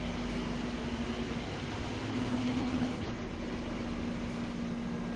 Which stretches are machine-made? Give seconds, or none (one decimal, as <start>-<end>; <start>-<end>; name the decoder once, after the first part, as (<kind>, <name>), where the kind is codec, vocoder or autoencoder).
2.1-3.3 (codec, HILCodec)